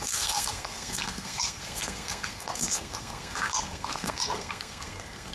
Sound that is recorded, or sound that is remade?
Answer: remade